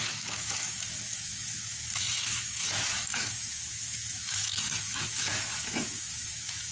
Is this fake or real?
fake